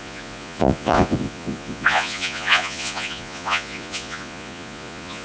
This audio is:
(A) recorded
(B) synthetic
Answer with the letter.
B